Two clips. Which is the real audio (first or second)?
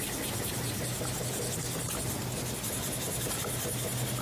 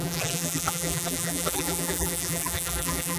first